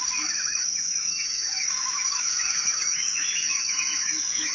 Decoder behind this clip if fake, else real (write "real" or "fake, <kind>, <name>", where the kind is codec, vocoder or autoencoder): fake, autoencoder, DAC-VAE